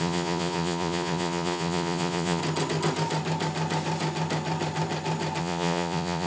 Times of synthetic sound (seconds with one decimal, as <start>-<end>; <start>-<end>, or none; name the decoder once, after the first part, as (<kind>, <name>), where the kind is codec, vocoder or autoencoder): 0.0-2.4 (vocoder, Vocos); 5.4-6.3